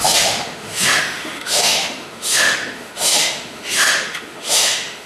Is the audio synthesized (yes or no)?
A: yes